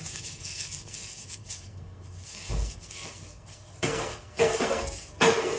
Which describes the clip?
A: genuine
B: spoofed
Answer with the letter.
B